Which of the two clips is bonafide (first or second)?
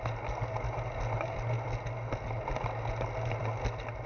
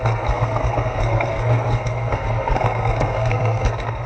first